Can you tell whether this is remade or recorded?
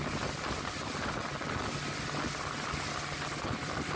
recorded